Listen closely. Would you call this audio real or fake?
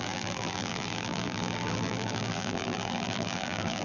fake